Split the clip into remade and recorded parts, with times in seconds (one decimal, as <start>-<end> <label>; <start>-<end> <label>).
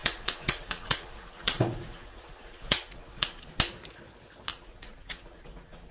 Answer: 0.0-3.5 remade; 3.5-4.5 recorded; 4.5-5.9 remade